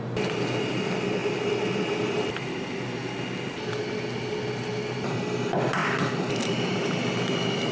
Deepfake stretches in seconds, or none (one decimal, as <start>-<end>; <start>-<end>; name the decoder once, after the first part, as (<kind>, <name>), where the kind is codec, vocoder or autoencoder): none